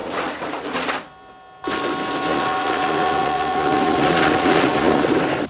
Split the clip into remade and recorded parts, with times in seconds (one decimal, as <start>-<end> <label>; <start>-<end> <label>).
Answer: 0.0-0.9 remade; 0.9-2.3 recorded; 2.3-5.1 remade; 5.1-5.5 recorded